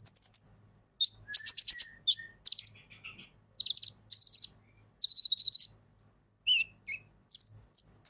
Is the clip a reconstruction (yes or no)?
no